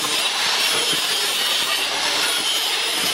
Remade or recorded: remade